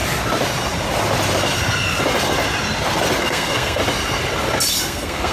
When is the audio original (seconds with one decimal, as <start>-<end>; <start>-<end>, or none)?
0.0-3.2; 3.8-4.8